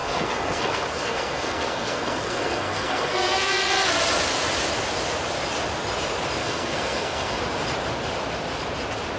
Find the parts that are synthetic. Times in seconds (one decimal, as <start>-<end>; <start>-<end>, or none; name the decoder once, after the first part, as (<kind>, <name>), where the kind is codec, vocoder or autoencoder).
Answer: 0.0-3.5 (codec, SNAC); 6.4-7.4